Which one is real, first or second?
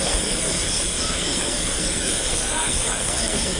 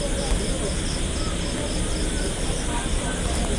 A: second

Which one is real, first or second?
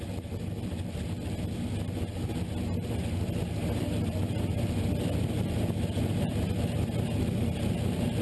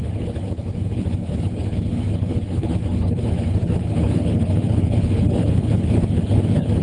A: first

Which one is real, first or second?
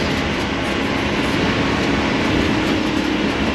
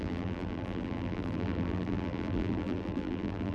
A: first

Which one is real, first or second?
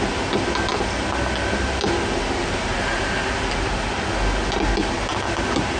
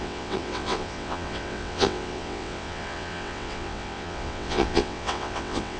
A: first